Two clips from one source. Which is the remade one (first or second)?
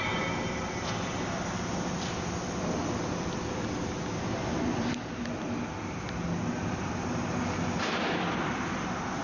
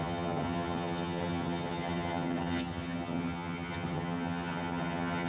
second